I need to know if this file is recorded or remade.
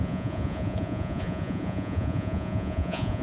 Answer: remade